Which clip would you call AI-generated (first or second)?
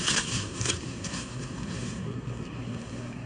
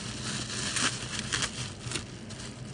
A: first